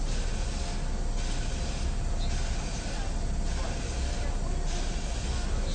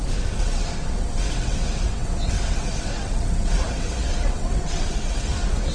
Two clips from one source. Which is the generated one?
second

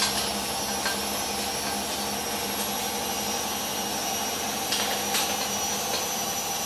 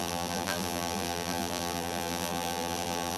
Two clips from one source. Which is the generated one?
second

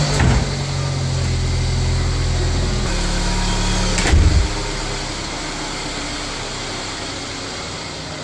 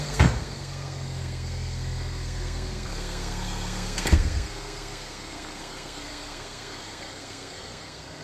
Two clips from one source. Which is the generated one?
second